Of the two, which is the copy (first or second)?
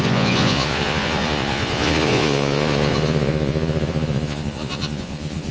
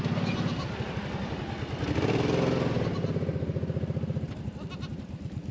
first